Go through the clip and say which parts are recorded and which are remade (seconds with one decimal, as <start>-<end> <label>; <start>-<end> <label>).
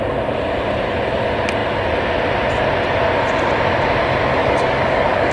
0.0-4.3 recorded; 4.3-5.3 remade